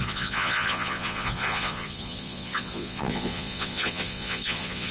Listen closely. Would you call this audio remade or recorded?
remade